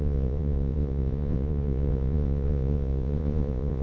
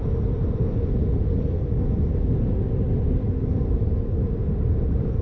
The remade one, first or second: first